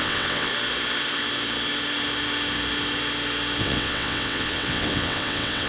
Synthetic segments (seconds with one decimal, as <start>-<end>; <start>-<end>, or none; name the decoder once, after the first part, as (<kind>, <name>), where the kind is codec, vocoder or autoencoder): 0.0-0.5 (vocoder, WaveNeXt); 3.6-5.7